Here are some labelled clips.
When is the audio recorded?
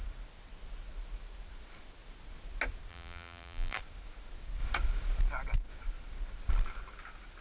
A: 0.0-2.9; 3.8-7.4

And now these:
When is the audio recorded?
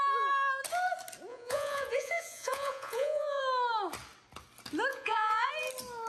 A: 0.0-1.3; 3.4-4.9; 5.5-6.1